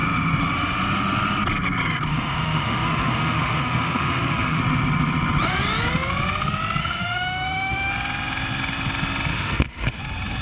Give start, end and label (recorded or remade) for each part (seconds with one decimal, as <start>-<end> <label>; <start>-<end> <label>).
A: 0.0-2.1 recorded; 2.1-4.6 remade; 4.6-6.8 recorded; 6.8-7.9 remade; 7.9-9.3 recorded; 9.3-10.0 remade; 10.0-10.4 recorded